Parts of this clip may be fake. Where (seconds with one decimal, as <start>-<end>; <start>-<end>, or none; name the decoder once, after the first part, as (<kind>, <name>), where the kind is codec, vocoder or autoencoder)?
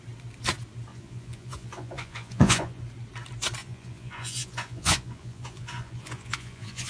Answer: 0.9-2.8 (vocoder, Vocos); 3.6-6.9